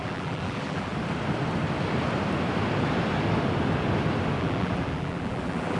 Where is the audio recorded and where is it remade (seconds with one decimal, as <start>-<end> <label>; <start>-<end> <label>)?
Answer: 0.0-0.9 remade; 0.9-4.4 recorded; 4.4-5.8 remade